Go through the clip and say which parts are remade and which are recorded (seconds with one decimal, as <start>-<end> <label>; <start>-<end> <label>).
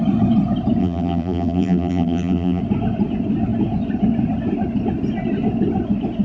0.0-0.8 recorded; 0.8-2.6 remade; 2.6-6.2 recorded